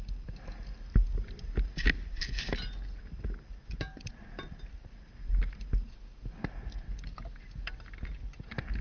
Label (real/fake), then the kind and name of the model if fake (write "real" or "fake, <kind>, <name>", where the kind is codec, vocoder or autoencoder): real